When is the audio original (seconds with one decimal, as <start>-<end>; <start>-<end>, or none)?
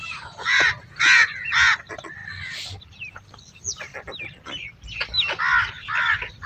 1.8-6.5